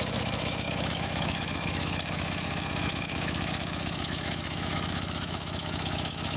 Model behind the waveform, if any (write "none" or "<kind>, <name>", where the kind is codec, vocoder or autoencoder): autoencoder, DAC-VAE